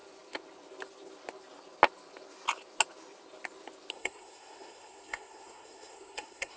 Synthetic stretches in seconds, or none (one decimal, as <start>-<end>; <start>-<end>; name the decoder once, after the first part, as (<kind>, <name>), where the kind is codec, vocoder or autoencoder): 3.9-6.6 (codec, SNAC)

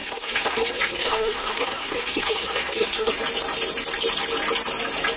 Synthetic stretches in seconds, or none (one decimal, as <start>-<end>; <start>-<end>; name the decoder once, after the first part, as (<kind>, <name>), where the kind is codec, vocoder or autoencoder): 0.0-3.1 (codec, SNAC)

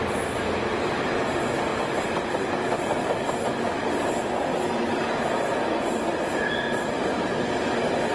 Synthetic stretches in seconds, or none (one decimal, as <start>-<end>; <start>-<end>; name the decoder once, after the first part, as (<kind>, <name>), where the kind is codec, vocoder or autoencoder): none

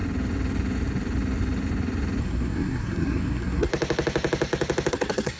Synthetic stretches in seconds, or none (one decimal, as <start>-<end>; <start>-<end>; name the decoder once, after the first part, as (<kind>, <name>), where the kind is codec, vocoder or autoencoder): 2.2-3.7 (codec, SNAC); 4.9-5.4

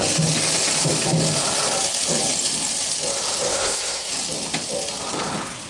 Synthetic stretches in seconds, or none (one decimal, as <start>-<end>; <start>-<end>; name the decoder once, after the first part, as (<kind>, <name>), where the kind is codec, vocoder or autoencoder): 3.5-4.1 (codec, SNAC)

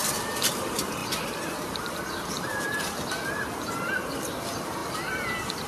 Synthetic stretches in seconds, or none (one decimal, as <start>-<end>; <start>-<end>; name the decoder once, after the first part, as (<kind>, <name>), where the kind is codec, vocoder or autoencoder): none

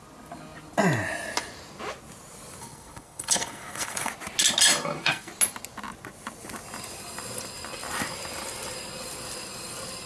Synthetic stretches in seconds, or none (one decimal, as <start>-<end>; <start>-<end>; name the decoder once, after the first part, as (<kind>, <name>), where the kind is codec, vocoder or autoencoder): 2.6-4.1 (codec, SNAC); 4.8-5.3

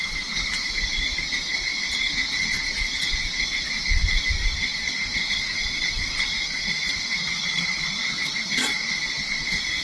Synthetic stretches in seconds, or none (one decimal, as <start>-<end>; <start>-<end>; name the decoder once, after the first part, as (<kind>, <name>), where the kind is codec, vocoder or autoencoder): none